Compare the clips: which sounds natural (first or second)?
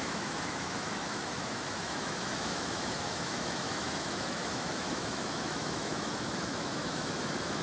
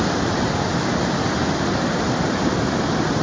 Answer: second